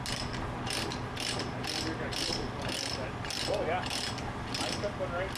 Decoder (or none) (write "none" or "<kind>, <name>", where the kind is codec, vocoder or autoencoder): none